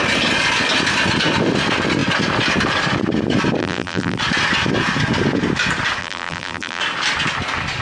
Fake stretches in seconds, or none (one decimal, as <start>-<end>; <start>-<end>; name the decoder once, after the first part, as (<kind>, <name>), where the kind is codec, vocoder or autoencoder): 3.6-4.2 (vocoder, BigVGAN v2); 6.0-6.8